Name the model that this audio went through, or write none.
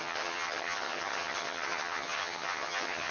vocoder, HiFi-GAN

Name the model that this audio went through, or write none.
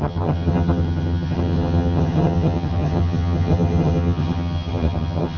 vocoder, HiFi-GAN